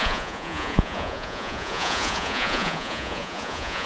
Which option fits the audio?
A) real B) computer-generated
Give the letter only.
B